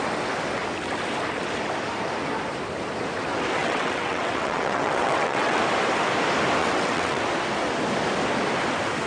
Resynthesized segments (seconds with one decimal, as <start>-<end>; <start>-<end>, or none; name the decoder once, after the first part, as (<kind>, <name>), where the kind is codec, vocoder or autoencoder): 3.6-5.6 (vocoder, WaveNeXt); 6.6-7.2